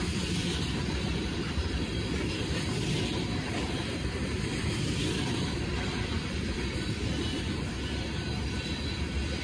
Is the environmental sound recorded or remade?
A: remade